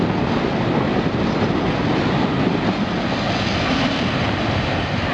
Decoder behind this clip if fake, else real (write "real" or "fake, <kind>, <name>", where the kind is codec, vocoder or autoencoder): real